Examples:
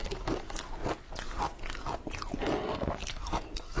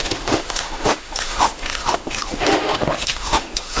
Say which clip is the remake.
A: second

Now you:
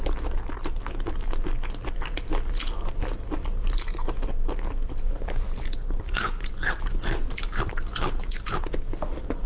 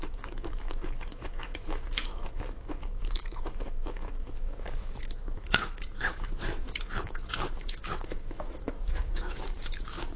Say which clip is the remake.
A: second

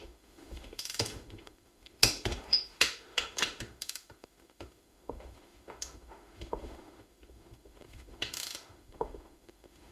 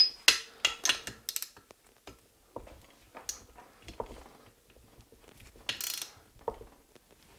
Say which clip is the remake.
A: first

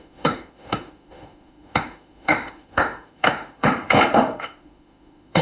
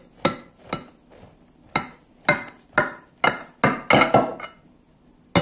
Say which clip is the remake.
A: first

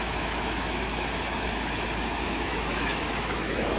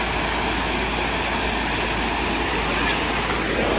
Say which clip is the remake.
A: first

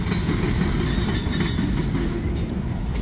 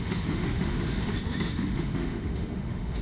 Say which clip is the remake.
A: second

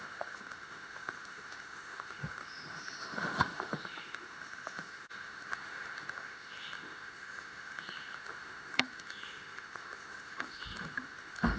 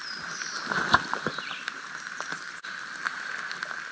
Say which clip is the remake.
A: first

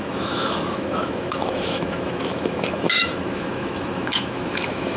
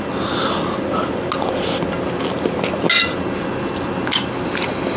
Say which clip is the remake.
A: first